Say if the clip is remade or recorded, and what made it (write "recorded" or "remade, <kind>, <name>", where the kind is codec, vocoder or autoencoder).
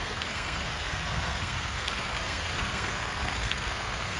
remade, codec, SNAC